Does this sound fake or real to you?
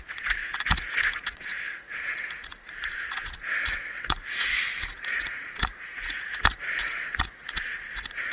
fake